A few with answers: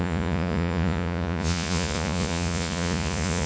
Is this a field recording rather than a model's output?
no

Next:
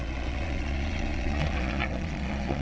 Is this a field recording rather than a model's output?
no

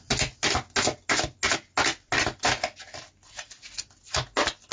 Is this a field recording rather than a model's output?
yes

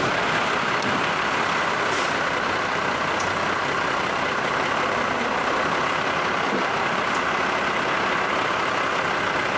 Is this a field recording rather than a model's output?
yes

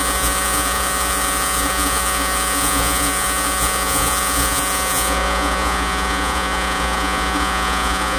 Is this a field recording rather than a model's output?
no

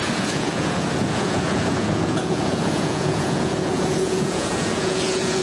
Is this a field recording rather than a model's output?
no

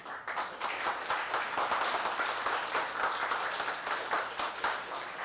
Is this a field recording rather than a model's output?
yes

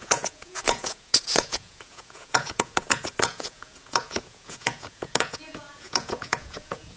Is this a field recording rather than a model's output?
no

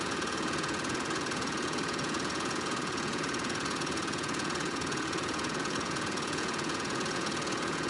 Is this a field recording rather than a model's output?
no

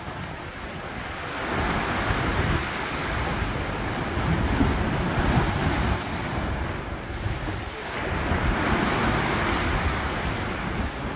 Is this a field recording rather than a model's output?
yes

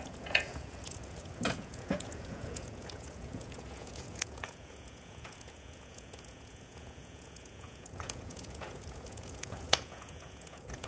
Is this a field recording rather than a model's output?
no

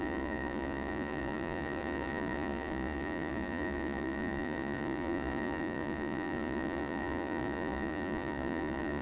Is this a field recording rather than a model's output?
no